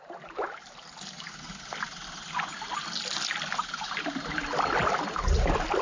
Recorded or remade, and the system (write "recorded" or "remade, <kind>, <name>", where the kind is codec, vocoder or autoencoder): recorded